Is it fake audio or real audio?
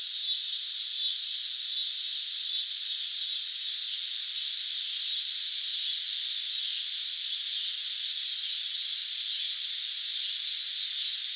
real